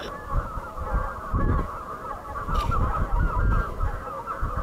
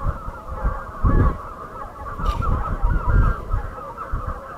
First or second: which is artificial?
second